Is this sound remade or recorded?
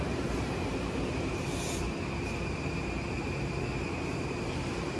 remade